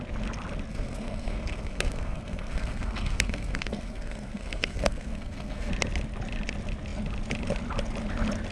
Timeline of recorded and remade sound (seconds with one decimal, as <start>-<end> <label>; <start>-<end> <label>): 0.0-0.7 recorded; 0.7-5.7 remade; 5.7-8.5 recorded